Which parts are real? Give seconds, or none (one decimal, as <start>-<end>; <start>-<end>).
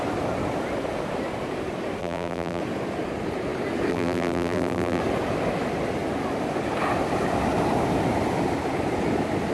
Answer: 0.0-2.0; 2.6-3.9; 5.0-9.5